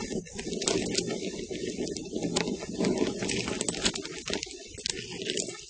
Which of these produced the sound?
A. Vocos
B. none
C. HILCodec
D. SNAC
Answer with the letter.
B